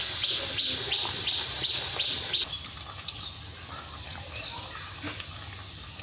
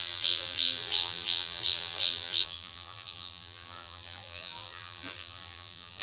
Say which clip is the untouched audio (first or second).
first